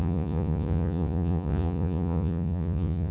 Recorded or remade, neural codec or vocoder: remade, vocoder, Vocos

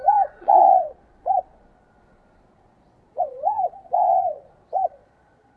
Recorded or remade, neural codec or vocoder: remade, vocoder, Vocos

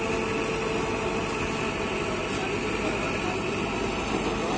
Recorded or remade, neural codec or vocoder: recorded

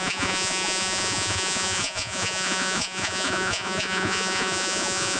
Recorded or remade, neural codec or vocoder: remade, vocoder, Vocos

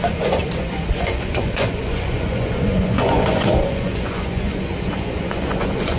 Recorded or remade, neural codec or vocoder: remade, vocoder, Vocos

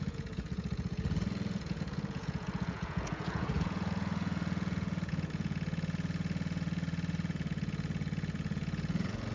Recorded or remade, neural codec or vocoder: remade, vocoder, Vocos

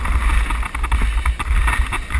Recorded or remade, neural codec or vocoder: recorded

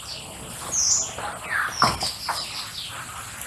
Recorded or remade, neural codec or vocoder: recorded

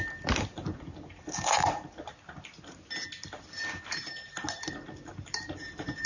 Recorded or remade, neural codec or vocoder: recorded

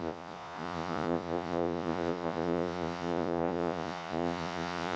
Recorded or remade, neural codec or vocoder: remade, vocoder, Vocos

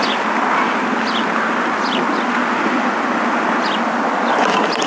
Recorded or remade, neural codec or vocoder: recorded